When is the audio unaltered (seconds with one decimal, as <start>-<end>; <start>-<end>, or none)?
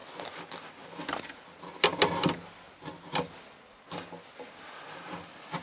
0.0-5.6